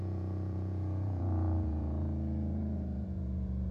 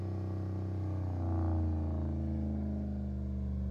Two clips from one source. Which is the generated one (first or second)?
first